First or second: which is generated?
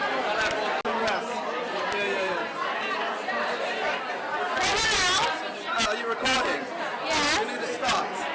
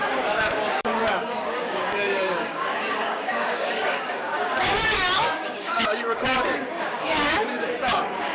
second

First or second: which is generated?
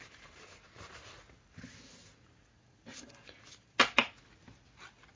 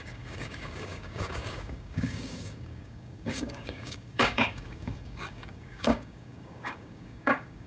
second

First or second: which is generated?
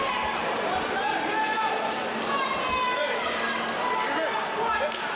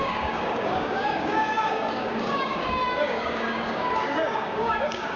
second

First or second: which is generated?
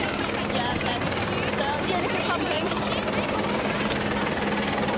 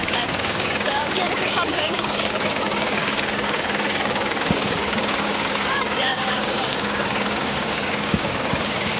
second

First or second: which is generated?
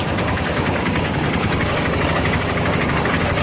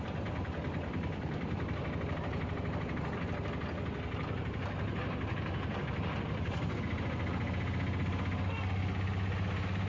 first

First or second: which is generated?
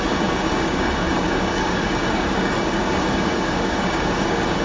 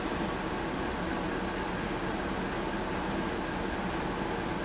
first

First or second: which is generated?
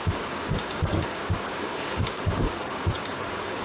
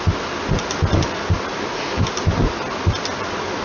first